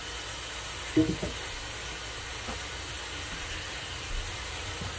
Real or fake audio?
real